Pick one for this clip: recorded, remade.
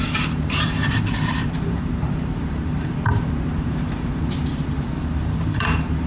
remade